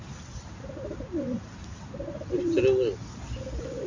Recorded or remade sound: recorded